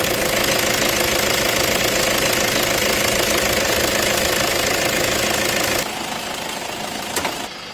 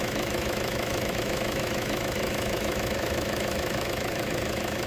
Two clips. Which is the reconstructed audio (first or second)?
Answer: second